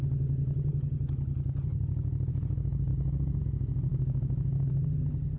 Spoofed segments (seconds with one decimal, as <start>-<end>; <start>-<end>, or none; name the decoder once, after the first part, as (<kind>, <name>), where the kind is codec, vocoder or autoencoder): 3.9-4.7 (autoencoder, DAC-VAE)